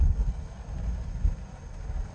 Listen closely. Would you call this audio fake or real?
real